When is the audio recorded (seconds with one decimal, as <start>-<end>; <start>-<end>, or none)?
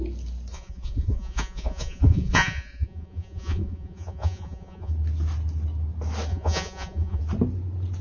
0.0-0.5; 4.9-6.3; 7.2-8.0